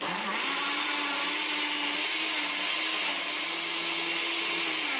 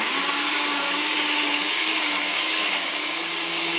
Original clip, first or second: first